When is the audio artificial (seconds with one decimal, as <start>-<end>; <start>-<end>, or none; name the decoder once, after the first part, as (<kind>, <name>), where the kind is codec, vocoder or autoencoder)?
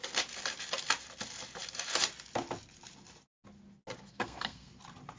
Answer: 4.1-4.7 (codec, SNAC)